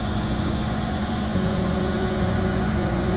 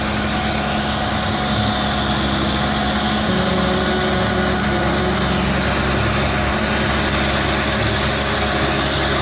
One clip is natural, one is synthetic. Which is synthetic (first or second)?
first